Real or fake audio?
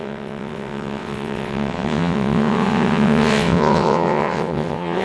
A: fake